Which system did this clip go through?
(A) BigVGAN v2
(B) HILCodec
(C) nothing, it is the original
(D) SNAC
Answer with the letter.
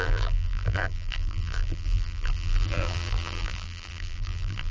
A